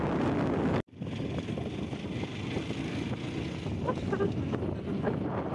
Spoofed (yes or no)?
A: no